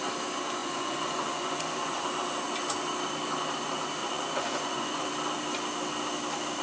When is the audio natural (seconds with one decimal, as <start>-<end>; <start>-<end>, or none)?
0.0-0.6; 2.1-4.0; 5.1-6.6